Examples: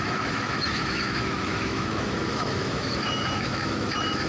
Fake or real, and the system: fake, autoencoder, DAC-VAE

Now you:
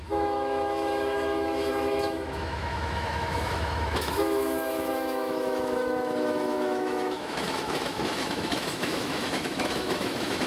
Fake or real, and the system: fake, autoencoder, DAC-VAE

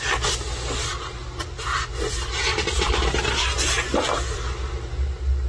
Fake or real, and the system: real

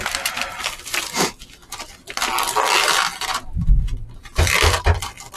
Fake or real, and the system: real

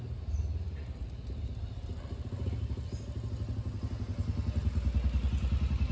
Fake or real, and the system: real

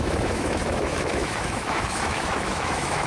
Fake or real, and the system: fake, autoencoder, DAC-VAE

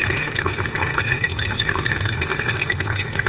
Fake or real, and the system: fake, autoencoder, DAC-VAE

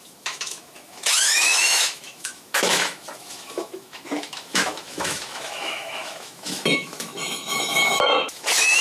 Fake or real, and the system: fake, autoencoder, DAC-VAE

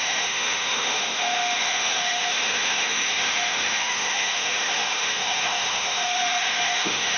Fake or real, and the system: fake, autoencoder, DAC-VAE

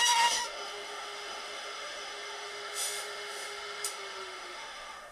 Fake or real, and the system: fake, autoencoder, DAC-VAE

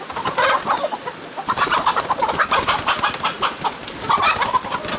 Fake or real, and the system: real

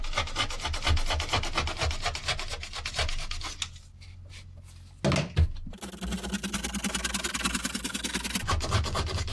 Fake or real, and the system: real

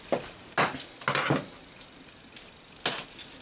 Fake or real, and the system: real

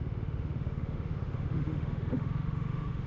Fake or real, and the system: fake, autoencoder, DAC-VAE